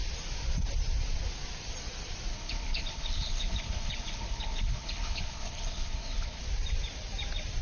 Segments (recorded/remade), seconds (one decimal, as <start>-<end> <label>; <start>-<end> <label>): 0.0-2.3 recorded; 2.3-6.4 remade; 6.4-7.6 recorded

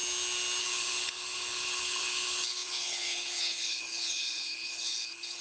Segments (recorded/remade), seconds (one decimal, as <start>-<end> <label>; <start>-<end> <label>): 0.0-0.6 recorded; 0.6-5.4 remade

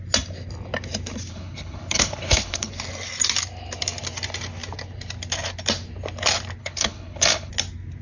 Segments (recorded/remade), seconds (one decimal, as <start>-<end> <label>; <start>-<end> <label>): 0.0-1.3 recorded; 1.3-2.7 remade; 2.7-6.6 recorded; 6.6-7.5 remade; 7.5-8.0 recorded